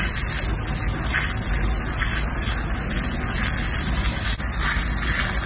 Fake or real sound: real